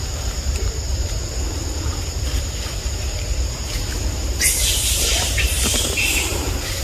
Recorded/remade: remade